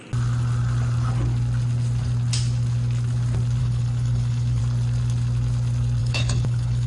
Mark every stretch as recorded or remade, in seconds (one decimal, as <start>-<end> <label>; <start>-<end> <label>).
0.0-3.6 recorded; 3.6-4.6 remade; 4.6-6.0 recorded; 6.0-6.9 remade

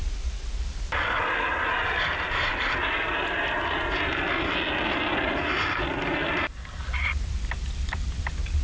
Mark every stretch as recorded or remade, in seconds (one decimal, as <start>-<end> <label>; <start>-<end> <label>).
0.0-8.6 recorded

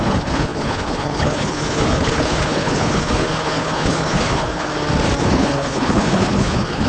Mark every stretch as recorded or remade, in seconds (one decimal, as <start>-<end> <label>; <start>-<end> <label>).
0.0-4.7 remade; 4.7-5.2 recorded; 5.2-6.9 remade

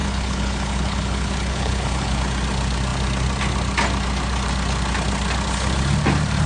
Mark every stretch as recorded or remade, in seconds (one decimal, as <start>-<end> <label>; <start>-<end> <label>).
0.0-2.2 remade; 2.2-6.5 recorded

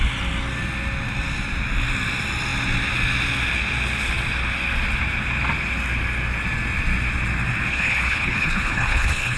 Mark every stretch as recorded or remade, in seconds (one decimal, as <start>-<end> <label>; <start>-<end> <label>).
0.0-7.7 recorded; 7.7-9.4 remade

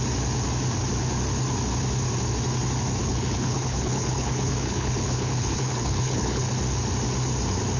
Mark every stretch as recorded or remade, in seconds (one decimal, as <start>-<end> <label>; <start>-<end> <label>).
0.0-3.0 recorded; 3.0-6.5 remade; 6.5-7.8 recorded